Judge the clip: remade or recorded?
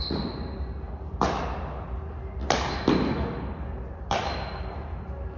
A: recorded